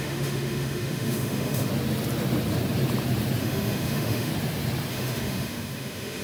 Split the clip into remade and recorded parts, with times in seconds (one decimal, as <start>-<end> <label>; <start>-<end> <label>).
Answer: 0.0-1.7 remade; 1.7-3.4 recorded; 3.4-4.3 remade; 4.3-4.9 recorded; 4.9-6.2 remade